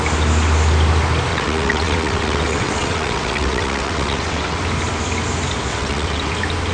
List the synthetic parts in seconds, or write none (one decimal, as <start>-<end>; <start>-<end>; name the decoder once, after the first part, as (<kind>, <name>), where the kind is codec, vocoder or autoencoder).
1.3-4.6 (vocoder, WaveNeXt); 5.7-6.3